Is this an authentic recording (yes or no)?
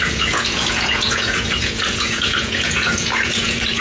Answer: no